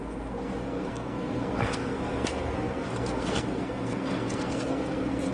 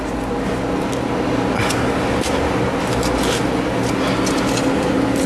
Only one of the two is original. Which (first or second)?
second